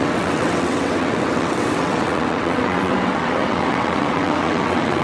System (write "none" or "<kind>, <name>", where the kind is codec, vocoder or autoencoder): vocoder, WaveNeXt